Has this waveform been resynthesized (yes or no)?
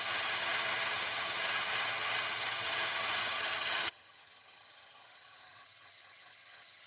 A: yes